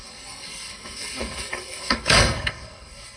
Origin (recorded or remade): remade